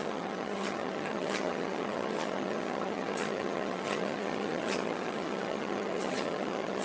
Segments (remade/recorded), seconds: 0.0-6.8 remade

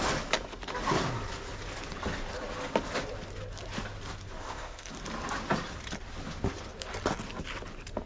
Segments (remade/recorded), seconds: 0.0-4.4 recorded; 4.4-4.9 remade; 4.9-8.1 recorded

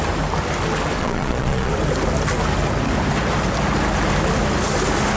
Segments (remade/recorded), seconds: 0.0-1.0 recorded; 1.0-1.7 remade; 1.7-5.2 recorded